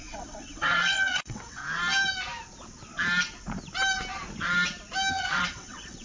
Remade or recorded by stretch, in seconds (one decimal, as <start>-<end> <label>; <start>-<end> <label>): 0.0-1.6 remade; 1.6-5.1 recorded; 5.1-6.0 remade